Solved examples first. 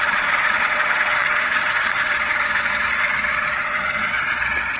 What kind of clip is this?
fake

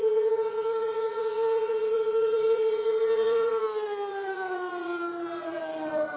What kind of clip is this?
fake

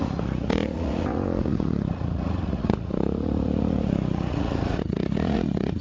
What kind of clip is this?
fake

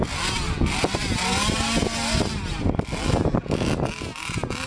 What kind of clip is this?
real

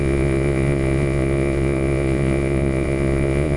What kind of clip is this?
fake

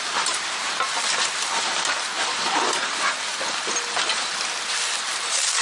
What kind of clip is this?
real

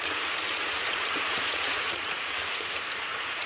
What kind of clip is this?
fake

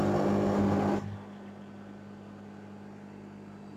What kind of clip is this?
real